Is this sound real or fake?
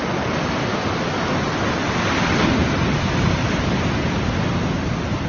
real